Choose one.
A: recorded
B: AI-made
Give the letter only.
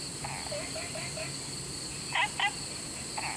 A